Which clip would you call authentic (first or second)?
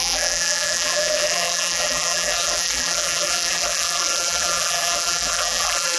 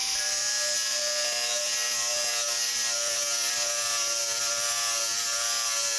second